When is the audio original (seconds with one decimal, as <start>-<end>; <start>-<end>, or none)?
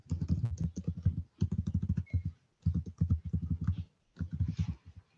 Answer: 0.0-3.1